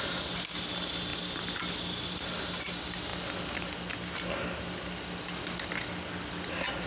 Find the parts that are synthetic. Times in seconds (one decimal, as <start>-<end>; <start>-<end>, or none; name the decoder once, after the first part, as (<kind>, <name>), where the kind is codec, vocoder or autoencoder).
none